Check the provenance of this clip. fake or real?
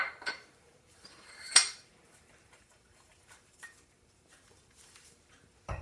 fake